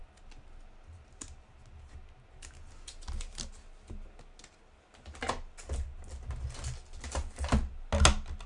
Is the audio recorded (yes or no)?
yes